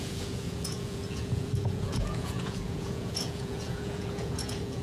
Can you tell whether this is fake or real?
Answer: fake